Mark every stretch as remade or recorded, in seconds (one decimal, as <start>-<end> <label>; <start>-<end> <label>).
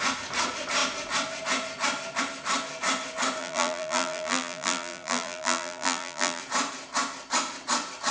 0.0-3.4 recorded; 3.4-6.4 remade; 6.4-8.1 recorded